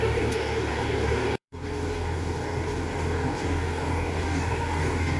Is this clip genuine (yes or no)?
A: no